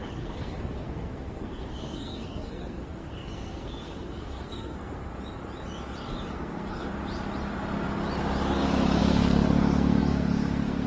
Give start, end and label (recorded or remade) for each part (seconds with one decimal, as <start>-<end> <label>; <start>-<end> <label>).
0.0-5.1 remade; 5.1-6.3 recorded; 6.3-6.9 remade; 6.9-9.0 recorded; 9.0-10.9 remade